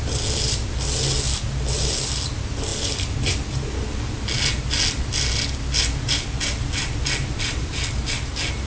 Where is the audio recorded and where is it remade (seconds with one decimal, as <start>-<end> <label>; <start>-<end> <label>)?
0.0-8.7 recorded